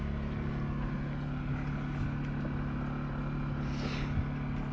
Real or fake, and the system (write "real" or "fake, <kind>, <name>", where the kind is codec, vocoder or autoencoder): real